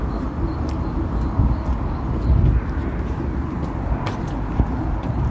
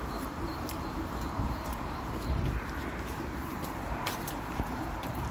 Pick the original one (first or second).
first